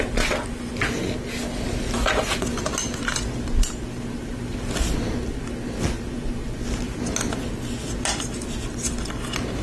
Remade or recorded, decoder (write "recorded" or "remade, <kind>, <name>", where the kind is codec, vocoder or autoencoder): recorded